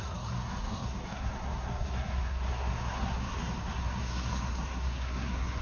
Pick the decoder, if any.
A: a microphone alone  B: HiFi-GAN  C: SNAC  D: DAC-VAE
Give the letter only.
C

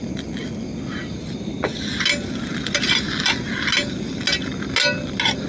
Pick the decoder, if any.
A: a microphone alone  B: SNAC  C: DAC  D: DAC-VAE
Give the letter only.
A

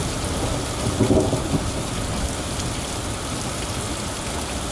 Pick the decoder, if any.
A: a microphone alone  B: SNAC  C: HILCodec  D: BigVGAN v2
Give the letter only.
A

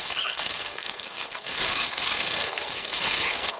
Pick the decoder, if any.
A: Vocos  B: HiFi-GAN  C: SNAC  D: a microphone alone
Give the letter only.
C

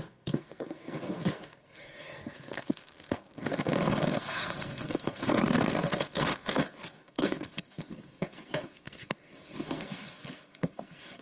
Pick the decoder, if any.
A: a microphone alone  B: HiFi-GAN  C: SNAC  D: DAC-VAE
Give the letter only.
C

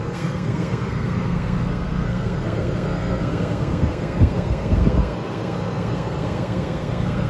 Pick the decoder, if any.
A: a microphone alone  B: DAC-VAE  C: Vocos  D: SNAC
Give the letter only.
D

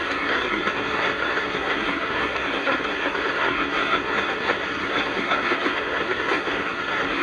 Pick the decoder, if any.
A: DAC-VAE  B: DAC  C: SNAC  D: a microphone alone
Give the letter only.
C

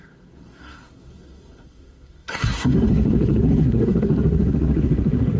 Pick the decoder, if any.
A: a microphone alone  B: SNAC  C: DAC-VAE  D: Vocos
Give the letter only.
B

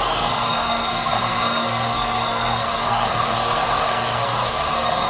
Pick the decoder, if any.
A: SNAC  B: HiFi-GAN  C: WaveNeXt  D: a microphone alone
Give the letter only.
A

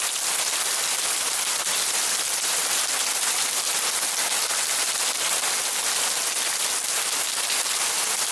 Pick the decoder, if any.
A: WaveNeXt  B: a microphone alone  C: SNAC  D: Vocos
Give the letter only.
B